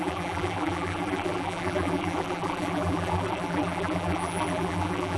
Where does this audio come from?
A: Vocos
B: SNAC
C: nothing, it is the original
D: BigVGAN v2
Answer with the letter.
D